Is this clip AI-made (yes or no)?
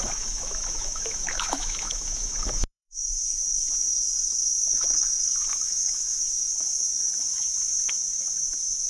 yes